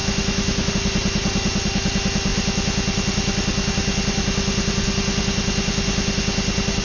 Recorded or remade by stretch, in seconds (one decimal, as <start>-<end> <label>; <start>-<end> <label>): 0.0-0.7 remade; 0.7-6.8 recorded